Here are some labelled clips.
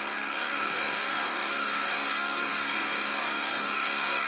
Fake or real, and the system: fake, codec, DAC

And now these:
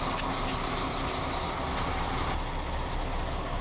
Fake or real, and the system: real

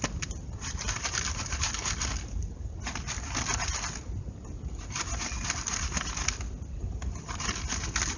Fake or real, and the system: real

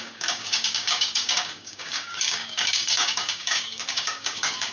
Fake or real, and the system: fake, codec, DAC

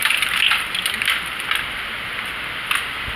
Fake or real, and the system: real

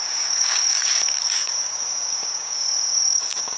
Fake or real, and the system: fake, codec, DAC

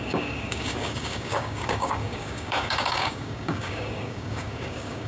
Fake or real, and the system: fake, codec, DAC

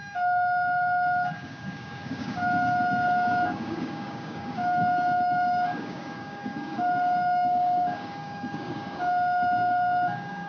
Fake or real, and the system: fake, codec, DAC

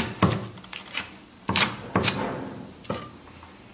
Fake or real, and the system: real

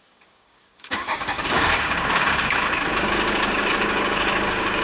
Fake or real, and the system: fake, codec, DAC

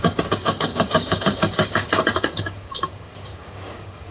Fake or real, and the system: fake, codec, DAC